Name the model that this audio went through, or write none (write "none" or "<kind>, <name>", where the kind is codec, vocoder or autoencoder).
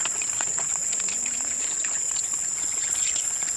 vocoder, Vocos